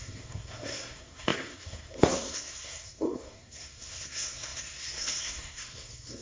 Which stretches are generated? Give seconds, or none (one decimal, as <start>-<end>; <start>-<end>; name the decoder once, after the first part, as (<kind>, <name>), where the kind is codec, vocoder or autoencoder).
0.0-6.2 (codec, SNAC)